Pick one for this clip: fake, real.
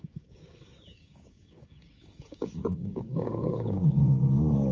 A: fake